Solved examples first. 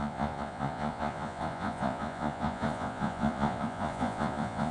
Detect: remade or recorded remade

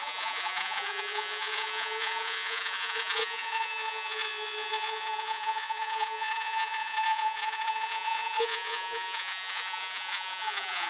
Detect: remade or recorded remade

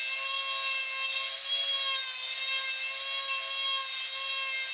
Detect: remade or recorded recorded